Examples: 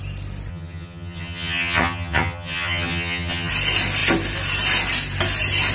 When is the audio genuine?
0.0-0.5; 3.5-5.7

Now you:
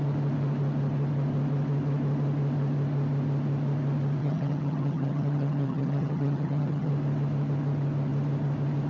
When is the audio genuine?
0.0-4.2; 6.9-8.9

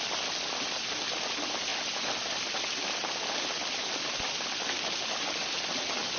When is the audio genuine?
0.0-6.2

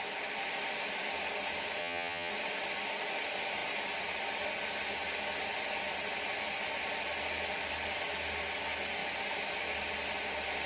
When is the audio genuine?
0.0-1.8; 2.3-10.7

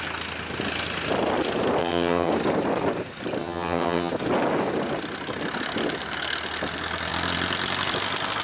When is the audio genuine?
0.0-1.8; 2.3-3.4; 4.1-8.4

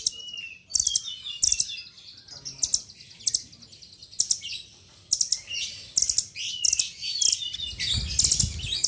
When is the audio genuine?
0.0-8.9

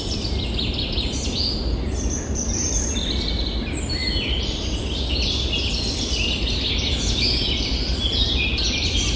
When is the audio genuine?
0.0-9.2

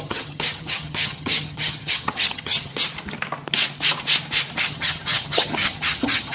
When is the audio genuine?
2.7-4.6